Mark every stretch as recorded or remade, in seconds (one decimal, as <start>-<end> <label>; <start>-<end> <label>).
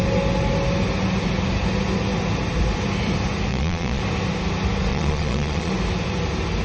0.0-3.5 recorded; 3.5-4.0 remade; 4.0-4.9 recorded; 4.9-5.7 remade; 5.7-6.6 recorded